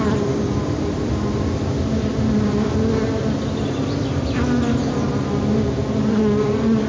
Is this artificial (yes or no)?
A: no